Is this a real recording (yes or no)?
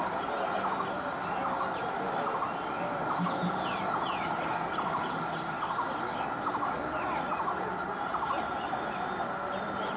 yes